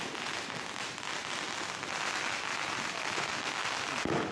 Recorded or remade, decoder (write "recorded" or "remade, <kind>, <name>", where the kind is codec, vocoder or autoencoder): recorded